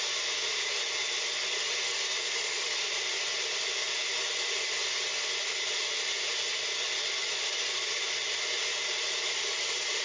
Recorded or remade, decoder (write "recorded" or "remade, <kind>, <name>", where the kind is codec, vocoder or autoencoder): recorded